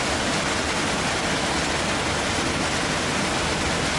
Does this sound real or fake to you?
real